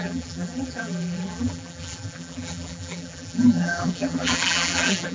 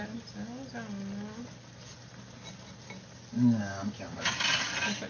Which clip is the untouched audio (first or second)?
second